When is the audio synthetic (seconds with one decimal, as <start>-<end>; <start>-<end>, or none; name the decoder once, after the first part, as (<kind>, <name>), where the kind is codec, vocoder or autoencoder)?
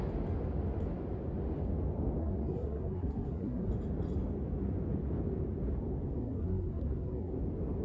2.2-3.7 (codec, SNAC); 6.1-7.3